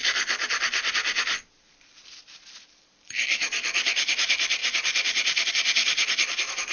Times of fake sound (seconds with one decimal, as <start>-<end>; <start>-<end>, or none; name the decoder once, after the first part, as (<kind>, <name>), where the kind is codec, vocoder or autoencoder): none